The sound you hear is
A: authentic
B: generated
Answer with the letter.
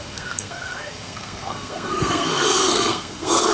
B